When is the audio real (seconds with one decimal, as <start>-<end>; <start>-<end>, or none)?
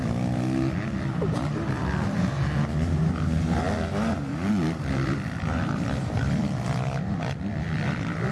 0.0-4.3